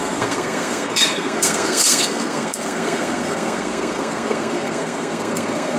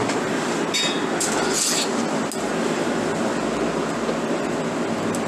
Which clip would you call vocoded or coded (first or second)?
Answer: first